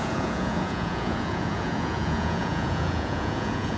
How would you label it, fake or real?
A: fake